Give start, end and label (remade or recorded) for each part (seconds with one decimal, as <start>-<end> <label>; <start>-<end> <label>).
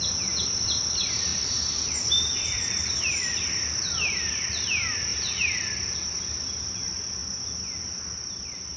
0.0-1.3 recorded; 1.3-4.3 remade; 4.3-5.1 recorded; 5.1-5.9 remade; 5.9-8.8 recorded